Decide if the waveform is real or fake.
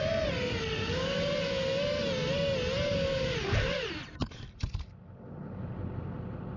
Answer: real